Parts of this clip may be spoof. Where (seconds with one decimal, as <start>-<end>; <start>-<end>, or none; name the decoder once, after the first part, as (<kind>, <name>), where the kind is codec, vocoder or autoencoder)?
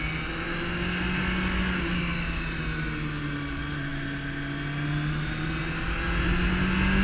none